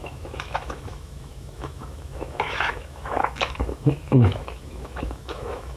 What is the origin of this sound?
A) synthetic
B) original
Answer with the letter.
A